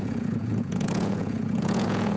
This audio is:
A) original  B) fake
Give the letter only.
B